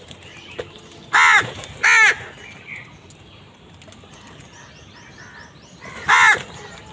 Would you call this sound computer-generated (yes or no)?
no